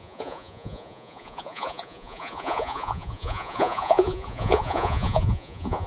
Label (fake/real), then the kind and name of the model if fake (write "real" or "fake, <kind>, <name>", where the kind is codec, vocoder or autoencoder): fake, vocoder, Vocos